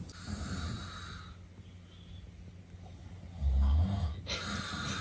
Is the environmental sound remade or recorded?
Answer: recorded